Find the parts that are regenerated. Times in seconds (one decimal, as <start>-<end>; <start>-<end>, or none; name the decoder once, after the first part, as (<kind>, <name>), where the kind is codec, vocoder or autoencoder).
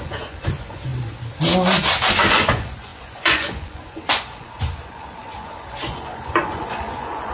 0.0-0.9 (vocoder, Vocos); 2.3-7.3